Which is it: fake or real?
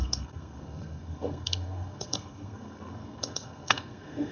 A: fake